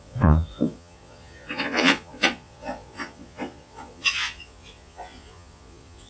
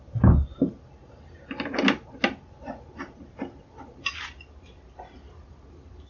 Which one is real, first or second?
second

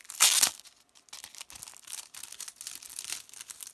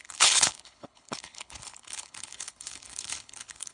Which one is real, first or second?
first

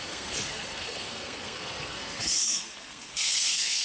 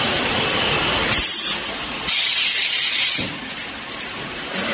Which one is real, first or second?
second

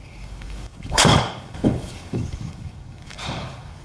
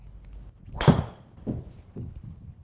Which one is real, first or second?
second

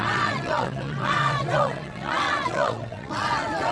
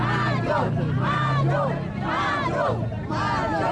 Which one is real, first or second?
second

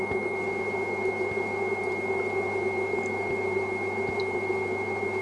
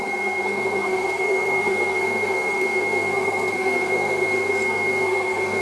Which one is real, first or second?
first